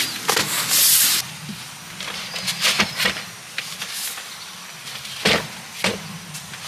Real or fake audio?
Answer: real